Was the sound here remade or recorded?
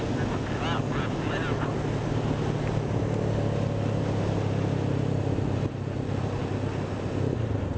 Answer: recorded